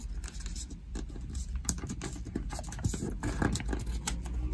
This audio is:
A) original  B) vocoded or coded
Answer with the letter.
A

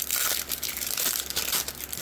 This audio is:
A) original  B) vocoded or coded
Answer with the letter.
A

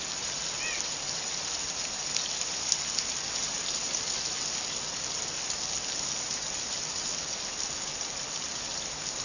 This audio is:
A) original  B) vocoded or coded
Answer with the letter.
A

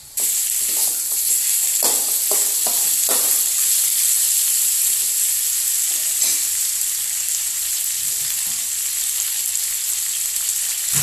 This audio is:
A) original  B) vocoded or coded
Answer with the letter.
A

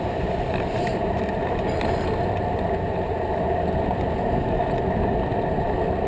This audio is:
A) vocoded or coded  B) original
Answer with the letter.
B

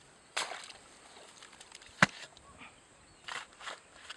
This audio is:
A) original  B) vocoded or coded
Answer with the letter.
A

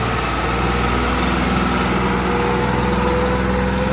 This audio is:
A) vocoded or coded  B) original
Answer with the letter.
B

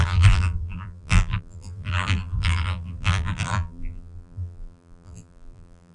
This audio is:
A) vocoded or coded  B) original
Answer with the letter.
A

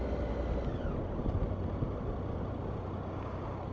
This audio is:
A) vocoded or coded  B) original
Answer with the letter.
B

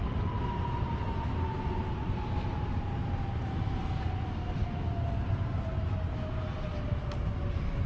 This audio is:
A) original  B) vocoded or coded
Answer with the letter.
A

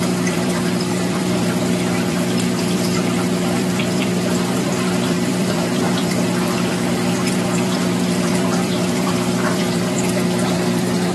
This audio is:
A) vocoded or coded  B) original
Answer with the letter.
A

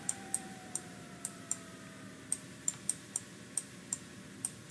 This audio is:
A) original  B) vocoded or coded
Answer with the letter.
B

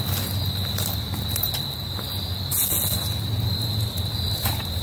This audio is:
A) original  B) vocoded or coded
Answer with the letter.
A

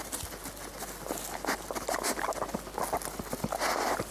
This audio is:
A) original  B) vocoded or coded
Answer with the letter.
A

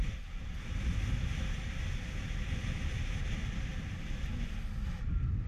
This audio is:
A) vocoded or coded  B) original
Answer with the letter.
B